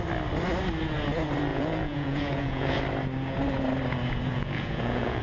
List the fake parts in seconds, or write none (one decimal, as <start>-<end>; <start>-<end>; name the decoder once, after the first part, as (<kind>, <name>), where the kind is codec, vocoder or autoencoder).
1.5-2.8 (vocoder, Vocos); 4.3-5.2